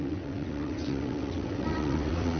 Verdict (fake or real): fake